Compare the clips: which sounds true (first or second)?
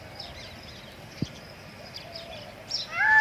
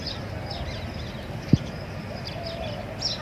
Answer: second